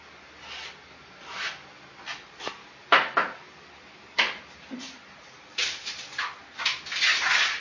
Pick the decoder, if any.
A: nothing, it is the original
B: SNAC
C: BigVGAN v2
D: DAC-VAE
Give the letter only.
A